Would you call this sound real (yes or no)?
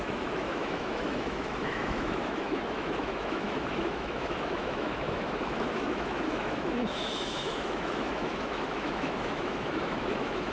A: no